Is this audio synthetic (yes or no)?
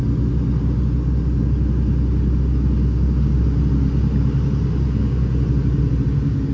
no